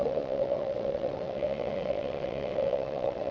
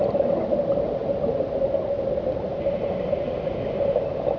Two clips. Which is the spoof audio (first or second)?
first